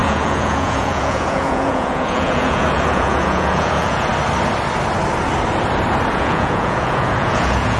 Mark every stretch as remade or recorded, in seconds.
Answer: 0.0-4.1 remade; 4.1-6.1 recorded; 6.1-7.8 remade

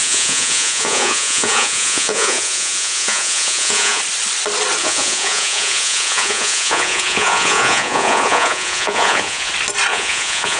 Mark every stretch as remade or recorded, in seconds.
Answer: 0.0-4.0 remade; 4.0-4.8 recorded; 4.8-9.5 remade; 9.5-9.9 recorded; 9.9-10.6 remade

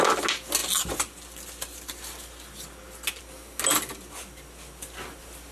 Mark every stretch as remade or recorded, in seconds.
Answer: 0.0-5.5 recorded

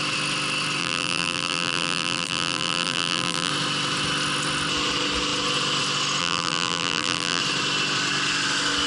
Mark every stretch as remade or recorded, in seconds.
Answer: 0.0-0.8 recorded; 0.8-3.5 remade; 3.5-6.2 recorded; 6.2-7.4 remade; 7.4-8.9 recorded

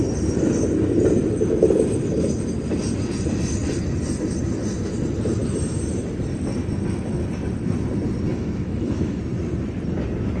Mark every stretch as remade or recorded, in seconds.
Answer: 0.0-8.3 recorded; 8.3-9.2 remade; 9.2-10.4 recorded

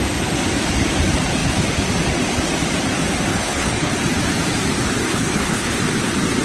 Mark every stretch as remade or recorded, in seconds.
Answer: 0.0-3.3 recorded; 3.3-3.9 remade; 3.9-5.1 recorded; 5.1-5.8 remade; 5.8-6.4 recorded